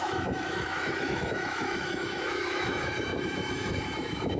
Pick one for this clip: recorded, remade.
remade